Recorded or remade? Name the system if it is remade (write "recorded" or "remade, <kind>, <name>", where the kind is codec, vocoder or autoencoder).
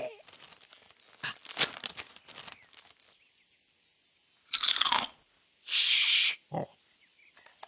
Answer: recorded